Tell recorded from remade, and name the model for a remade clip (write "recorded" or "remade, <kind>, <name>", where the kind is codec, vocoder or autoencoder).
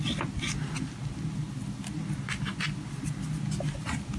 recorded